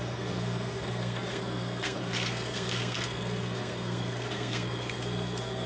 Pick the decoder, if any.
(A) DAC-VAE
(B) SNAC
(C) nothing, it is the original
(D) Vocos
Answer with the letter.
B